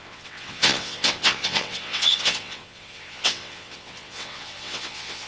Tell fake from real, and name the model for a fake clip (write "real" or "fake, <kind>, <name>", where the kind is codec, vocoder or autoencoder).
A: fake, vocoder, WaveNeXt